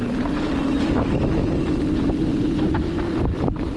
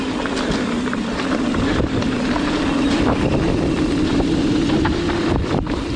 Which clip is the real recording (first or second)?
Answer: first